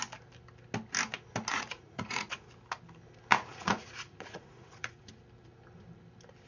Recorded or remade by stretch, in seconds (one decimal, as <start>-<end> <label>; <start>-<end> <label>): 0.0-1.5 recorded; 1.5-2.5 remade; 2.5-3.3 recorded; 3.3-5.1 remade; 5.1-6.5 recorded